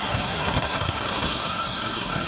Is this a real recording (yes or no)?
no